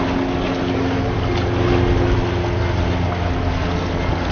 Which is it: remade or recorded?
recorded